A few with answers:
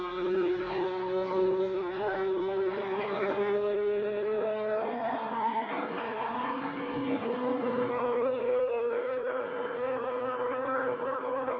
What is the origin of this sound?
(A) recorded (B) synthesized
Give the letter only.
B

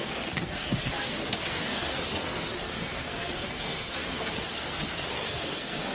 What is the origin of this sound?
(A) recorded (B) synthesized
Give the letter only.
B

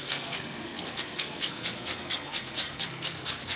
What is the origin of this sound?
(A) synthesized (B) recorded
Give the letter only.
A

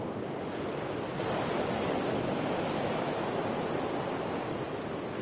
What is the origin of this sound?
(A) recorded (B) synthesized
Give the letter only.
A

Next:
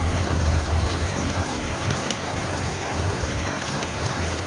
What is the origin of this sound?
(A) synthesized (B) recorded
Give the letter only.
A